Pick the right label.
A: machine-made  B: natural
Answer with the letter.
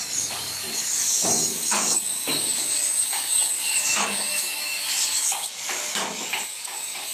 A